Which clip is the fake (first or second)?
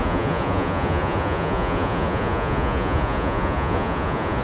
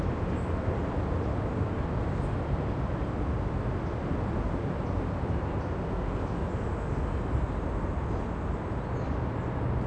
first